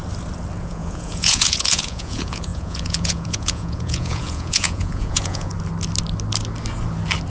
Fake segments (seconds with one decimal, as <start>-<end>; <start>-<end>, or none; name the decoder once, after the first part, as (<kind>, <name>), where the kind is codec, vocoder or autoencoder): 0.6-5.5 (vocoder, Vocos)